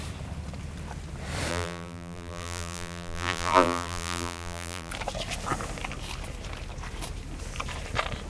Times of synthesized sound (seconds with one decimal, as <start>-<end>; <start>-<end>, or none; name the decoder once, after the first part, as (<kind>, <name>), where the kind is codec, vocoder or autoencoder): 1.5-4.9 (vocoder, BigVGAN v2)